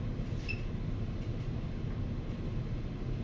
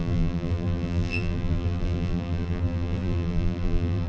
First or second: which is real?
first